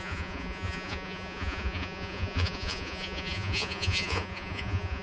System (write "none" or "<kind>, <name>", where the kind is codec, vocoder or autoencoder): vocoder, Vocos